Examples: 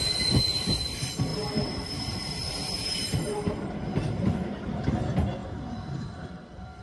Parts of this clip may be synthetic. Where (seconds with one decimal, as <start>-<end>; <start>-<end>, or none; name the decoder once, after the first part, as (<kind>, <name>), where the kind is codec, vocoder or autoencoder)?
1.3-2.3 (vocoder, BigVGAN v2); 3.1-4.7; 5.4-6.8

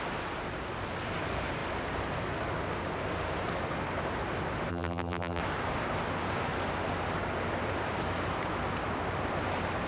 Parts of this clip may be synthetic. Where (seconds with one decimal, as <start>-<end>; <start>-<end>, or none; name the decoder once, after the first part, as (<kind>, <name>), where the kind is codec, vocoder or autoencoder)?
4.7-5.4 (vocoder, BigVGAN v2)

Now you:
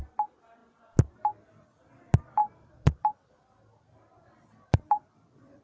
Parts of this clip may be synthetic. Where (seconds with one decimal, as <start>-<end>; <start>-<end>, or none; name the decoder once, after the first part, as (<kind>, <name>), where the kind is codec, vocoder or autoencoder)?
2.4-3.3 (vocoder, BigVGAN v2); 4.2-5.6

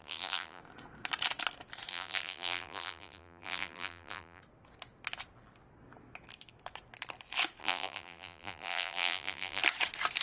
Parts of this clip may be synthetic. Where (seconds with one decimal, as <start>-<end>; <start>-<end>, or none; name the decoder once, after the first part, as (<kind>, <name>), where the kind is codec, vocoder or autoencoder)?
0.0-0.6 (vocoder, BigVGAN v2); 1.9-4.4; 7.6-9.6

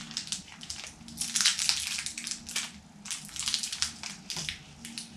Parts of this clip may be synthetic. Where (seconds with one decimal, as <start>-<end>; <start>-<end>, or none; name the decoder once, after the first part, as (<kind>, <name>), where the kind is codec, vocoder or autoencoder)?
none

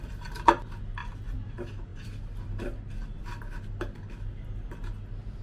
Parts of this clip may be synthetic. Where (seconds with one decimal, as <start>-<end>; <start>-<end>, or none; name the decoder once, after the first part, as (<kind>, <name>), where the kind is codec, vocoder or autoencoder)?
1.0-1.5 (vocoder, BigVGAN v2); 1.9-3.4

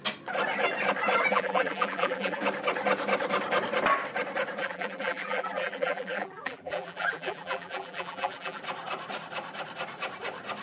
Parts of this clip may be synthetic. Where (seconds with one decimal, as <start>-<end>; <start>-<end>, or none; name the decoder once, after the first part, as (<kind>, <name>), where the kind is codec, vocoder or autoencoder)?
1.3-2.4 (vocoder, BigVGAN v2); 4.6-8.6

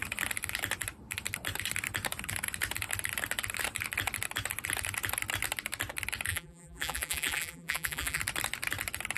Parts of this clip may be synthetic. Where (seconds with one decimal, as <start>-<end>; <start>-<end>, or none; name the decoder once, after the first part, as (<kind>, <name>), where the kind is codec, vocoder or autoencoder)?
6.3-8.2 (vocoder, BigVGAN v2)